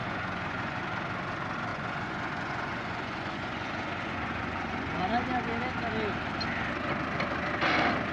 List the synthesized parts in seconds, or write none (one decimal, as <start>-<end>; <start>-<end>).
0.0-0.8; 1.7-5.1